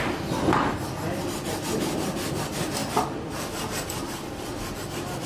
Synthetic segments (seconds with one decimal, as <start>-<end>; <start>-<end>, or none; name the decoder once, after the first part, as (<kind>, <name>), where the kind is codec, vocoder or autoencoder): none